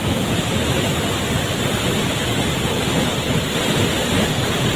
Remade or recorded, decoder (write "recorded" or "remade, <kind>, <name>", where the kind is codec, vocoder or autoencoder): recorded